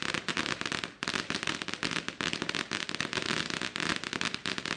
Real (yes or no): no